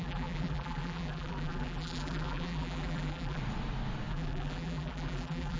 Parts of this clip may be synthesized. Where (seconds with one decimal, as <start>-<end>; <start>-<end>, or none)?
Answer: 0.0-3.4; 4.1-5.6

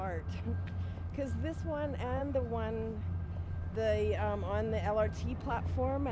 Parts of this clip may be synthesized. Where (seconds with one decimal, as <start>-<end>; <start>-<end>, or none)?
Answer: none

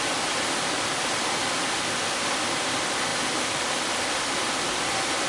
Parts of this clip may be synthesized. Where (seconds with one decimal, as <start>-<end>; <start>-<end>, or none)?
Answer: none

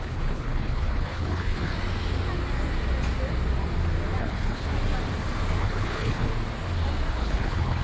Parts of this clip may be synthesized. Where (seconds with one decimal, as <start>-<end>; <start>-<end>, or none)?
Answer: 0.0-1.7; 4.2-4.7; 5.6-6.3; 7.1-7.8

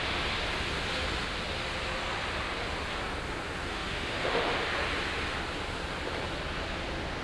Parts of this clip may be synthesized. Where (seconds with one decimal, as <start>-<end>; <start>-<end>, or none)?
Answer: 3.7-4.5

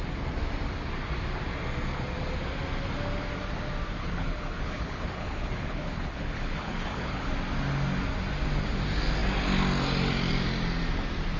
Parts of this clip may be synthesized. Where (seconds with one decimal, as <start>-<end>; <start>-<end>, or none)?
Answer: 4.0-7.3

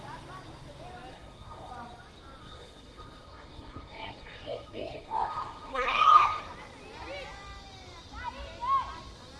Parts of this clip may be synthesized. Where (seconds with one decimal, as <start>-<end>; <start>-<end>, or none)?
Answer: 1.1-1.7; 2.4-6.4